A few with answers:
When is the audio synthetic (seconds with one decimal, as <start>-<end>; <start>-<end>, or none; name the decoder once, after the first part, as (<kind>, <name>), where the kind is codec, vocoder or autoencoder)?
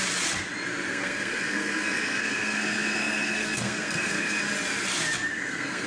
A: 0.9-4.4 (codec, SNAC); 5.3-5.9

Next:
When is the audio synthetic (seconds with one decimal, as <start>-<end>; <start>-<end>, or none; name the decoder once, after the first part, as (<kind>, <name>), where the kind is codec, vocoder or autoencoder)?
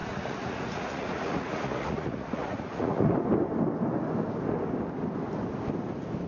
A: 0.0-3.1 (vocoder, Vocos)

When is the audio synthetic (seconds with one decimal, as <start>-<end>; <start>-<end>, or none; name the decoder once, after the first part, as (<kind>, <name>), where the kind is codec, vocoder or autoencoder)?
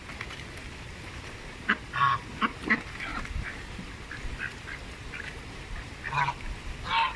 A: 3.1-4.1 (vocoder, BigVGAN v2)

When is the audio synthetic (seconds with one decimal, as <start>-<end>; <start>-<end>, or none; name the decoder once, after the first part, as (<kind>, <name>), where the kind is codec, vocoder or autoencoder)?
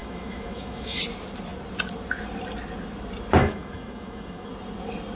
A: 0.0-1.0 (autoencoder, DAC-VAE); 3.4-4.5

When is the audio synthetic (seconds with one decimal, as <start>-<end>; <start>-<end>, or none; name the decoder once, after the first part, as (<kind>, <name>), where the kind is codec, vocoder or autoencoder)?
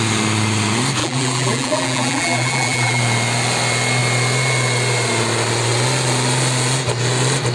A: 1.0-3.0 (vocoder, BigVGAN v2)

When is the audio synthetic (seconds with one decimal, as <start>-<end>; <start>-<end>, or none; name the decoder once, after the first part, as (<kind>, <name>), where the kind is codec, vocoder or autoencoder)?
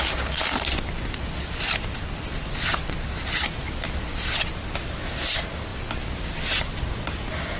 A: none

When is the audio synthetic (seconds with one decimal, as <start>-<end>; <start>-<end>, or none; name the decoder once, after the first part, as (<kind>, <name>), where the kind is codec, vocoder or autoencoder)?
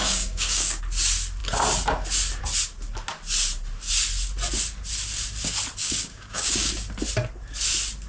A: 0.0-0.8 (codec, DAC); 5.8-6.7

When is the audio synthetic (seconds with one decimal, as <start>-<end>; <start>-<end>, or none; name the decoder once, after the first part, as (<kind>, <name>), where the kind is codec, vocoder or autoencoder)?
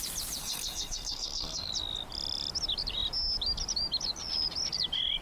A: 0.4-1.7 (codec, SNAC)